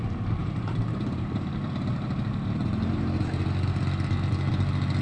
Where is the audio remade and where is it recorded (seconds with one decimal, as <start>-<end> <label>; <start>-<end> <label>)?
0.0-0.4 recorded; 0.4-3.4 remade; 3.4-5.0 recorded